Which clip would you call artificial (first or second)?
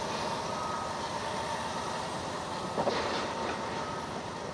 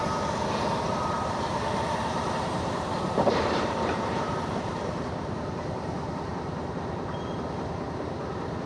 second